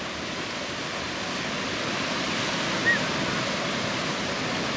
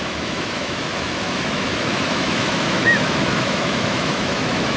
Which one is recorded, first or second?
first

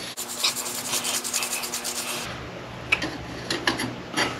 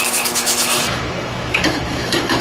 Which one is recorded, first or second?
first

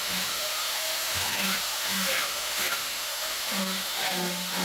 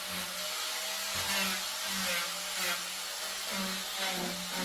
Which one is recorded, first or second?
second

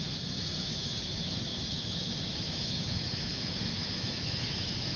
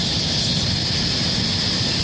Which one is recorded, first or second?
second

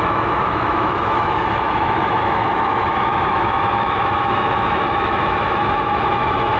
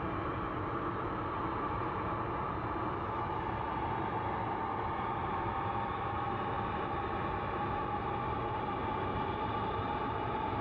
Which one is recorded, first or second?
second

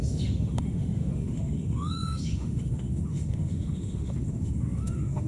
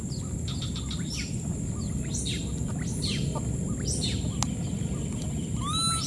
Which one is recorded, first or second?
second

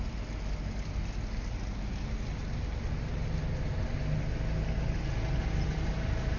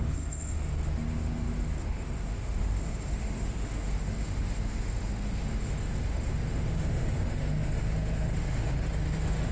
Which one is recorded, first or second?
first